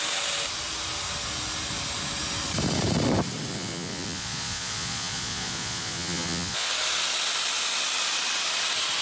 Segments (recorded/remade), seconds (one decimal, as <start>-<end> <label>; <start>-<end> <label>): 0.0-3.5 recorded; 3.5-6.7 remade; 6.7-9.0 recorded